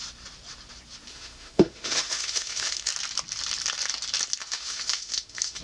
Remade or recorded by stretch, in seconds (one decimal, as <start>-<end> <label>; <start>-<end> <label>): 0.0-1.1 recorded; 1.1-2.9 remade; 2.9-4.4 recorded; 4.4-5.6 remade